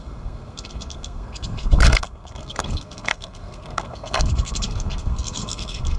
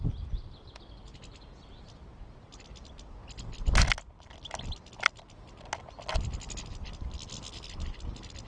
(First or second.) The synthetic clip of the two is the first